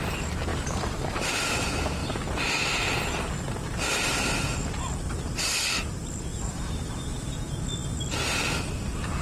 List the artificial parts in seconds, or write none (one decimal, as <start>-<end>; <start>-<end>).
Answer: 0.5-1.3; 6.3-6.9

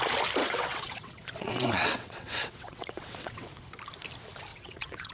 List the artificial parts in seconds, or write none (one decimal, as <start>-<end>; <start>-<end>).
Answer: 0.4-3.5; 4.5-5.1

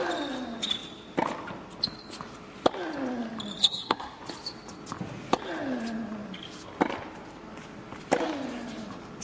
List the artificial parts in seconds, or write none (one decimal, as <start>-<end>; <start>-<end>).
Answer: 3.6-4.2

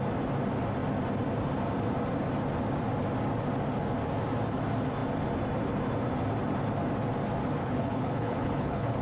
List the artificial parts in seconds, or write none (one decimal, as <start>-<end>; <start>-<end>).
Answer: 7.6-9.0

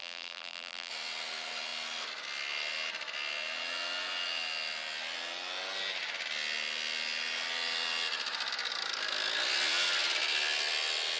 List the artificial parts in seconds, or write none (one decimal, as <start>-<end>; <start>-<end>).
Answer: 0.0-0.9

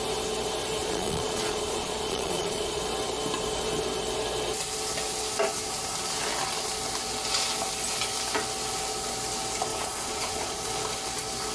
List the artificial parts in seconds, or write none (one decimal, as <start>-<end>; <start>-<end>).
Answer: 0.8-2.8; 9.7-10.7

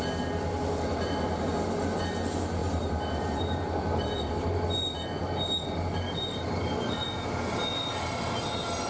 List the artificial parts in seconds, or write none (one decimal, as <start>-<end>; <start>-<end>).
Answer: 2.6-4.7